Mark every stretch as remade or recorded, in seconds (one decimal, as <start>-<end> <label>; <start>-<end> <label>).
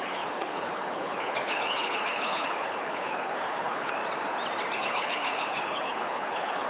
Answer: 0.0-4.0 remade; 4.0-4.8 recorded; 4.8-6.7 remade